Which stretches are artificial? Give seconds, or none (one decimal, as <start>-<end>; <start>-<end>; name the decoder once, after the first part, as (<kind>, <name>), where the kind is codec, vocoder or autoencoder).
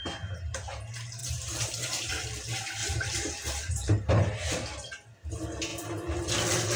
1.2-2.1 (vocoder, BigVGAN v2); 2.8-4.1